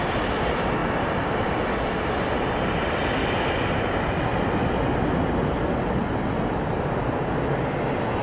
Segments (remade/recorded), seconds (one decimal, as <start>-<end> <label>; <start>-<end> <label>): 0.0-8.2 recorded